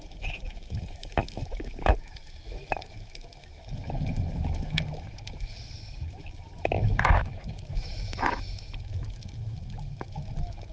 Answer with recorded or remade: remade